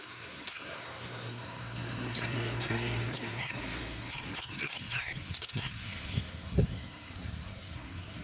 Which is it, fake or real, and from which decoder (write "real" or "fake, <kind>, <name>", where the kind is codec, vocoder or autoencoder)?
fake, codec, SNAC